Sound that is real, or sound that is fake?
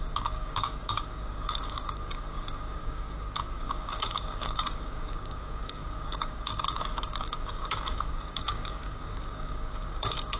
fake